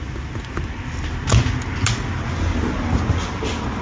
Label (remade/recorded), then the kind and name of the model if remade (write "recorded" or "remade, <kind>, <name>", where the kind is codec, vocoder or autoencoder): recorded